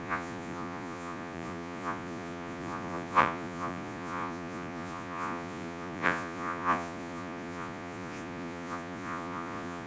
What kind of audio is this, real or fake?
fake